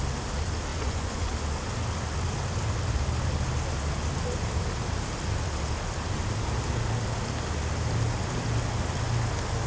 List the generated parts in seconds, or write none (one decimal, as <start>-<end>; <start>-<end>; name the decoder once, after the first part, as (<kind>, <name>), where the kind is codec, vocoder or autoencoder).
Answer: 0.7-1.3 (vocoder, Vocos)